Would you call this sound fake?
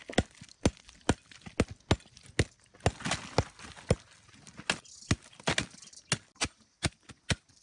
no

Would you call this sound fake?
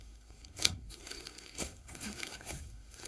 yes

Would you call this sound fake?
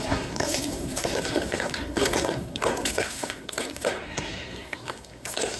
yes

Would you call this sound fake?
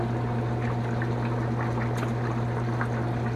no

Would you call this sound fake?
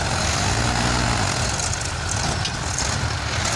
no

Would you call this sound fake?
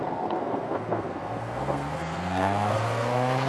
yes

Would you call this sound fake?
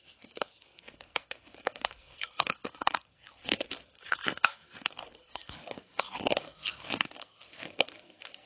yes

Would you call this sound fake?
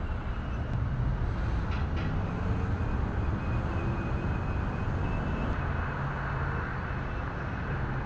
no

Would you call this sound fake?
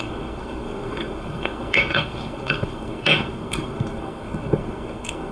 yes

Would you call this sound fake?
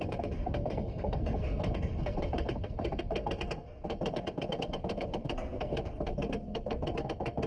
yes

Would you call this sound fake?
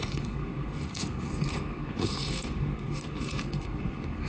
yes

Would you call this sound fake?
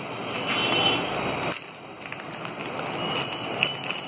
no